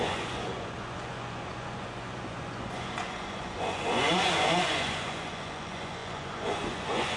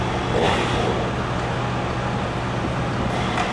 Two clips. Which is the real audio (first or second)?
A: second